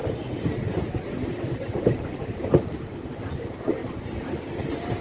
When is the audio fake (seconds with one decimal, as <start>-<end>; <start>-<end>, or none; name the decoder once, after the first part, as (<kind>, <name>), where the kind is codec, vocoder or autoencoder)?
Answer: 0.0-5.0 (vocoder, BigVGAN v2)